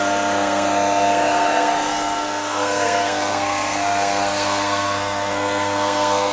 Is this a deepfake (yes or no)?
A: yes